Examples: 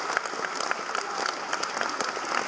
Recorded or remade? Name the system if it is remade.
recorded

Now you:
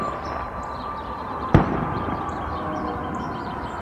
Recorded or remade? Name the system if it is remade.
remade, vocoder, BigVGAN v2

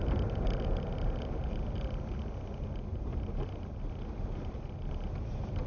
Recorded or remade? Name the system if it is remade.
recorded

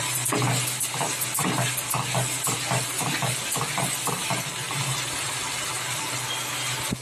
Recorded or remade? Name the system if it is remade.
recorded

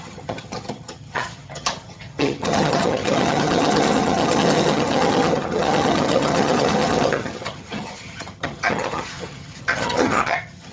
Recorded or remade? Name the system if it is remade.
remade, vocoder, HiFi-GAN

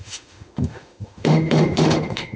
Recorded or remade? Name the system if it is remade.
remade, autoencoder, DAC-VAE